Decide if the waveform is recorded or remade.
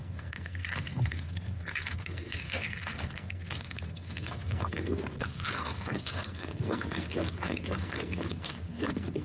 remade